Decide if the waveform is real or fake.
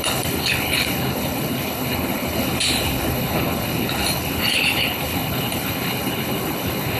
fake